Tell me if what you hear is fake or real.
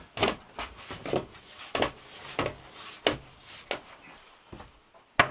real